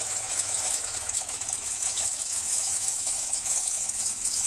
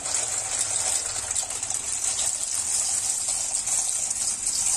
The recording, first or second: second